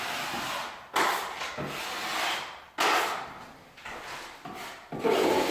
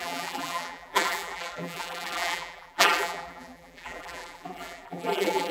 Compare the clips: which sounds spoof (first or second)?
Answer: second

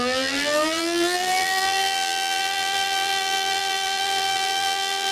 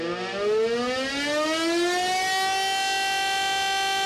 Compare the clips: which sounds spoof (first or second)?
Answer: first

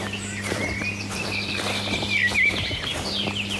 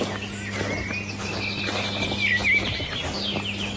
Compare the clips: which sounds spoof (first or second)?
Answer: first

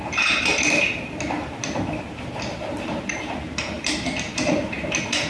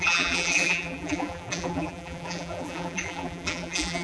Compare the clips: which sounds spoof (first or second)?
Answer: second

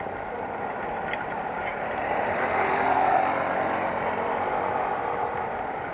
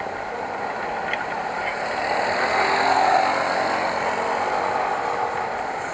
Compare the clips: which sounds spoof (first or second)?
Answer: first